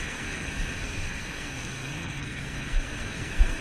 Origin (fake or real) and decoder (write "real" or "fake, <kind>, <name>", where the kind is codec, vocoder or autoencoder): fake, codec, SNAC